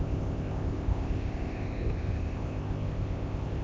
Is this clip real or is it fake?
fake